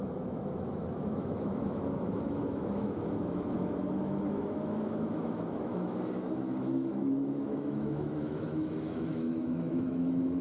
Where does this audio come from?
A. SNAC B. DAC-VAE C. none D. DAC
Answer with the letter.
B